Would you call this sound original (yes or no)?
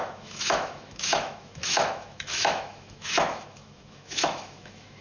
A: no